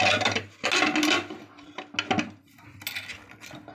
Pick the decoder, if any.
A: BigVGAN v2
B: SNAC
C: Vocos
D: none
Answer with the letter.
D